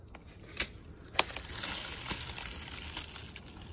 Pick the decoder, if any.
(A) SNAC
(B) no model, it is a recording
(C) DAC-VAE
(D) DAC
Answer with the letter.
B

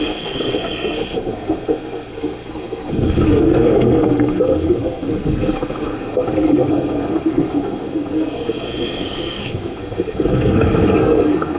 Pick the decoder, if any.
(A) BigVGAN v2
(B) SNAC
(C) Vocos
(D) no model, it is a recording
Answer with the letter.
B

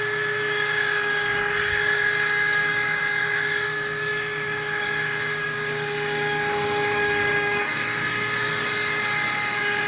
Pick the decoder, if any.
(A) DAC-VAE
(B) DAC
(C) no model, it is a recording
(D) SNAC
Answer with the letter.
B